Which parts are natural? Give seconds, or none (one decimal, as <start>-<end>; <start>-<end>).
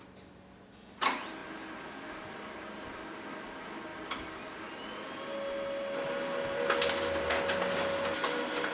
0.0-8.7